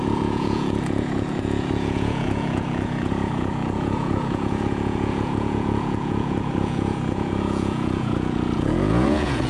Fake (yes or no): yes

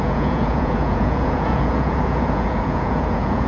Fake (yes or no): yes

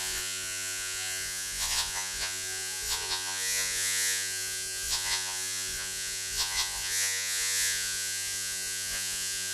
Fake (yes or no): yes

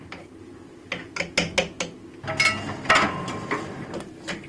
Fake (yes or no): no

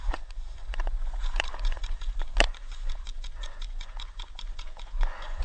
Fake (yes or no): yes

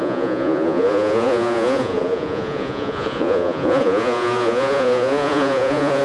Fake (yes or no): yes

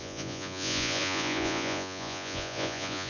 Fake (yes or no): yes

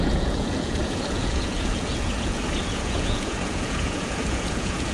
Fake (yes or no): yes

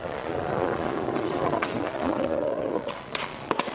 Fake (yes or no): yes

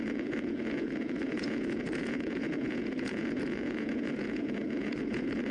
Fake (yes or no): yes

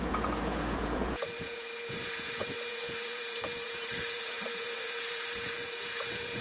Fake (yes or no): yes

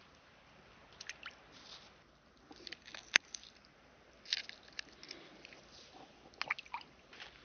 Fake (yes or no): no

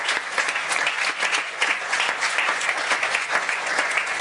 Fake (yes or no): yes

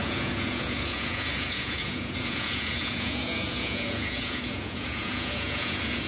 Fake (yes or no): yes